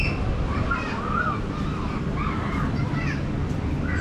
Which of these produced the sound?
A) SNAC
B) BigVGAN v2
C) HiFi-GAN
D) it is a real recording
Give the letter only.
B